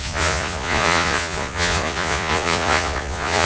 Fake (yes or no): yes